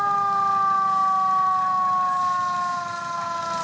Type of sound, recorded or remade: recorded